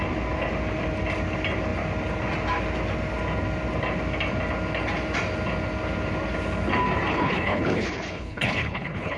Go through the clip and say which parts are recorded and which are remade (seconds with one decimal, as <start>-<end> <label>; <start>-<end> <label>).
0.0-7.1 recorded; 7.1-9.2 remade

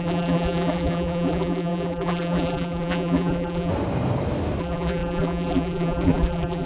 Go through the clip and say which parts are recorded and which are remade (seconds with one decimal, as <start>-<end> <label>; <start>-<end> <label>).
0.0-3.7 remade; 3.7-4.6 recorded; 4.6-6.7 remade

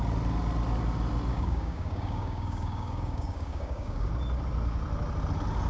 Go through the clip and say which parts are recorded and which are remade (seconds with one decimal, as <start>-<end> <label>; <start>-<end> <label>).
0.0-1.3 recorded; 1.3-4.1 remade; 4.1-5.7 recorded

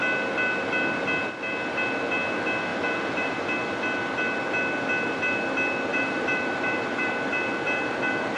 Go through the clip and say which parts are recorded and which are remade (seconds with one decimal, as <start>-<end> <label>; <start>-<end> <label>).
0.0-2.7 recorded; 2.7-3.3 remade; 3.3-5.9 recorded; 5.9-7.1 remade; 7.1-8.4 recorded